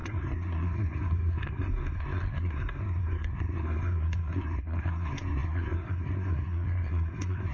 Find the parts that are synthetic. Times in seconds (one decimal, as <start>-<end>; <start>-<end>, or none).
0.0-7.5